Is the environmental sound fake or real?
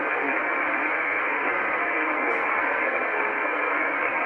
fake